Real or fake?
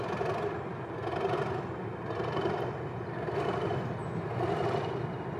real